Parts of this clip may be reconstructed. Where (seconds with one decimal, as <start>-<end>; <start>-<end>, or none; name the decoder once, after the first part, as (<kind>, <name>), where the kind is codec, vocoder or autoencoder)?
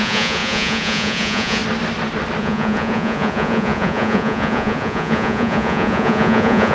0.0-1.6 (vocoder, Vocos); 2.4-6.7